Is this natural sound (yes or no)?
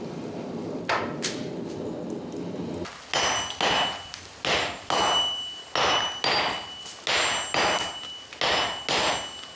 yes